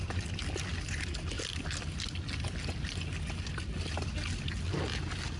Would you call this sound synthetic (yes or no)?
no